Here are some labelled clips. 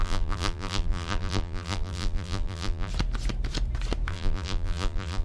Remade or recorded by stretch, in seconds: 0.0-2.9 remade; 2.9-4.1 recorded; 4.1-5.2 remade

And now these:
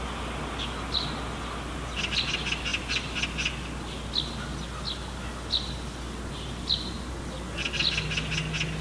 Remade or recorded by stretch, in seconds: 0.0-8.8 recorded

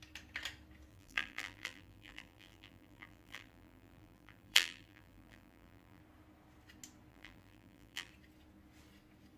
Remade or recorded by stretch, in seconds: 0.0-0.9 recorded; 0.9-6.0 remade; 6.0-7.1 recorded; 7.1-8.1 remade; 8.1-9.4 recorded

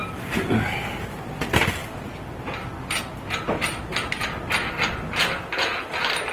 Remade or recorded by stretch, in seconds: 0.0-0.7 remade; 0.7-6.3 recorded

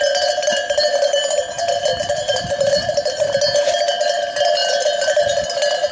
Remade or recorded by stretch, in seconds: 0.0-1.9 recorded; 1.9-3.2 remade; 3.2-5.9 recorded

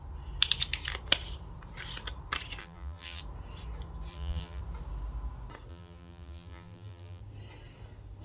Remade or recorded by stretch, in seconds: 0.0-2.6 recorded; 2.6-3.2 remade; 3.2-4.1 recorded; 4.1-4.6 remade; 4.6-5.7 recorded; 5.7-7.2 remade; 7.2-8.2 recorded